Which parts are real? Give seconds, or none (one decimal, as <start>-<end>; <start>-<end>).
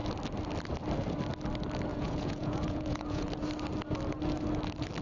0.0-1.9; 3.3-5.0